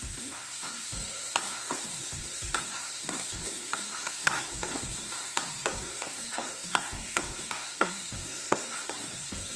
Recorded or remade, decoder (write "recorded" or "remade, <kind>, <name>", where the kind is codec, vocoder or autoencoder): remade, codec, SNAC